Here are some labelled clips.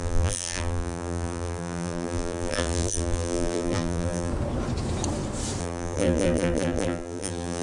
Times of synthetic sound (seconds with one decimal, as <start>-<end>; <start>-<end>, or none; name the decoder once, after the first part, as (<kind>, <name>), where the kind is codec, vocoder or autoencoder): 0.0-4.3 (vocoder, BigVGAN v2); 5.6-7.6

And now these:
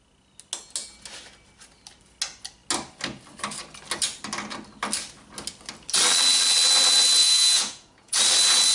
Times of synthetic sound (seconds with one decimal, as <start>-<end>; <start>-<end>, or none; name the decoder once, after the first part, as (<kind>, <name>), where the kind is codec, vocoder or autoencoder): 7.2-8.2 (vocoder, Vocos)

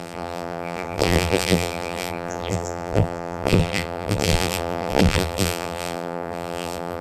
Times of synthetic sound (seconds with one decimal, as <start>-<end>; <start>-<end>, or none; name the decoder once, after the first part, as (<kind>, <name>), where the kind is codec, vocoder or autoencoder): 0.0-7.0 (vocoder, BigVGAN v2)

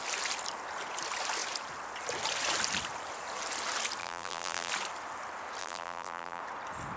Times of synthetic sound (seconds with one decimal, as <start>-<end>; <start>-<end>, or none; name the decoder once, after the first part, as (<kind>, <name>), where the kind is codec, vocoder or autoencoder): 4.0-4.7 (vocoder, BigVGAN v2); 5.6-6.4

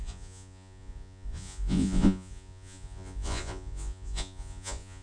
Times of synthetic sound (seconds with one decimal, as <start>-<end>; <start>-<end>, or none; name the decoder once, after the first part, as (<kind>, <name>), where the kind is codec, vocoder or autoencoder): 0.0-5.0 (vocoder, Vocos)

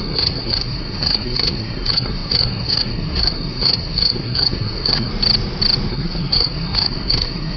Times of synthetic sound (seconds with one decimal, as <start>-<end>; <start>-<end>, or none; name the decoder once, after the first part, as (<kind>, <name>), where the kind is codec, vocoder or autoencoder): 0.0-5.1 (codec, SNAC); 5.9-7.6

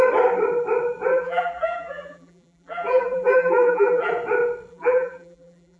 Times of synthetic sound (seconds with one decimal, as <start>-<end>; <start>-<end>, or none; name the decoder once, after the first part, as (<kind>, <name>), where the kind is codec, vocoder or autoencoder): 1.1-4.1 (vocoder, BigVGAN v2); 4.7-5.8

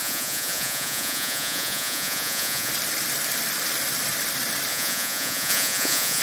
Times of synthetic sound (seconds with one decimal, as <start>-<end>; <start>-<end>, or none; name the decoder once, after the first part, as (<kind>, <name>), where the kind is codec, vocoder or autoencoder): 0.0-2.7 (vocoder, Vocos); 4.7-6.2